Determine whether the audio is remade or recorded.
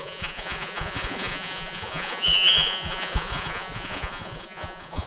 remade